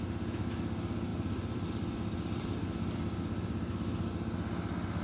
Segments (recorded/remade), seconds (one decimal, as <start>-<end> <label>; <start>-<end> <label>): 0.0-1.1 recorded; 1.1-4.1 remade; 4.1-5.0 recorded